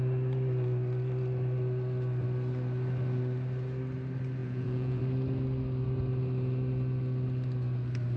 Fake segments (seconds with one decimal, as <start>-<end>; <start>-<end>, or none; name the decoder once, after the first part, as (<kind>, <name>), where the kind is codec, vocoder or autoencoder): 4.4-5.0 (vocoder, Vocos)